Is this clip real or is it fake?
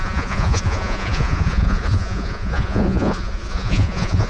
fake